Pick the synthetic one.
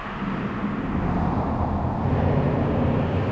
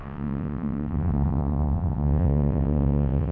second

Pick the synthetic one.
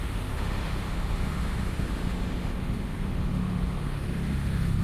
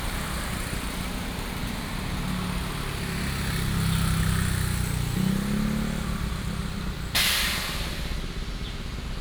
first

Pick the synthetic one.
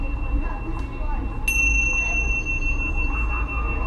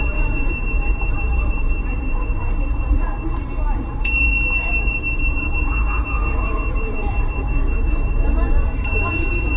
second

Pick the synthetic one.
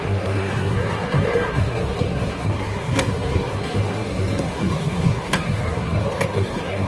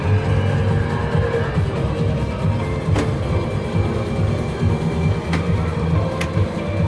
first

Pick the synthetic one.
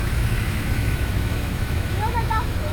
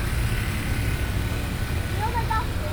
first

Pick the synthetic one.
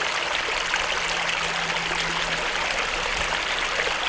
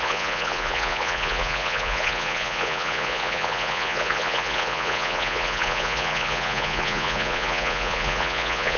second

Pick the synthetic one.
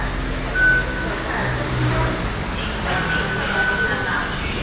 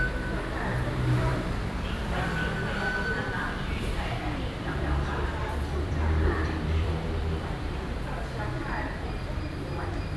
second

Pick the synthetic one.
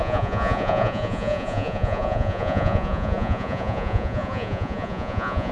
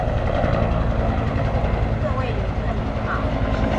first